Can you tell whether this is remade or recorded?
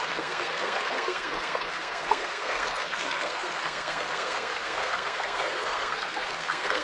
remade